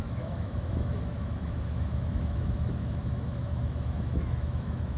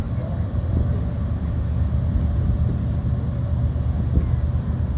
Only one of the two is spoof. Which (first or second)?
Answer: first